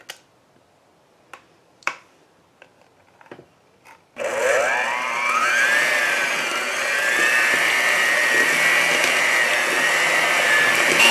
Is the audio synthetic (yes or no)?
no